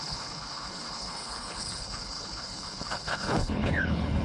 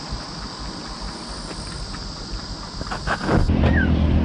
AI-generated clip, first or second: first